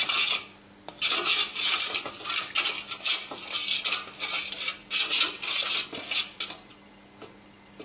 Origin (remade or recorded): recorded